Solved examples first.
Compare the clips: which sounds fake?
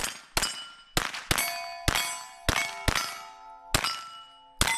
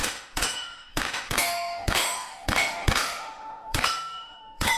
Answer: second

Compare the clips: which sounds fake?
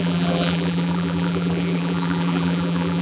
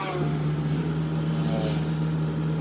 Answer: first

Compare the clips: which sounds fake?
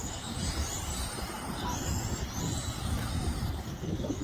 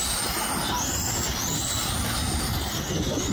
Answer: first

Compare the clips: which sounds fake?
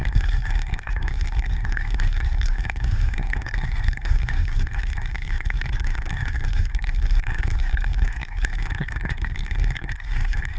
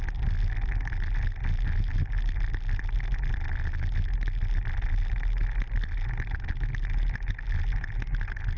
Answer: first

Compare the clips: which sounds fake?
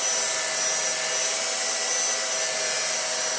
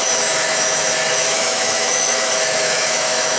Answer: second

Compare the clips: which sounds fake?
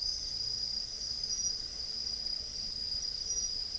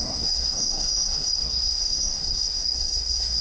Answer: second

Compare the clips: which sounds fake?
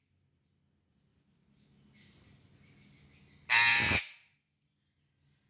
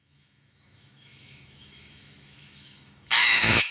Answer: second